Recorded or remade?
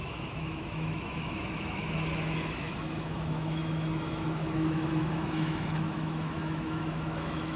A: remade